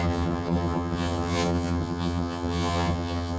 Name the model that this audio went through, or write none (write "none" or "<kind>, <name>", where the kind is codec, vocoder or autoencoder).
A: vocoder, HiFi-GAN